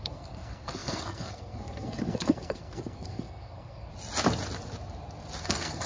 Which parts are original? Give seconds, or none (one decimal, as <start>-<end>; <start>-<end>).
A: 3.9-5.4